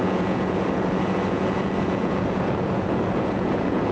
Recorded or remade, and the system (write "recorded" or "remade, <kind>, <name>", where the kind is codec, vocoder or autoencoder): remade, vocoder, Vocos